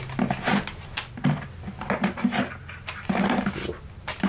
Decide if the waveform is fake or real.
real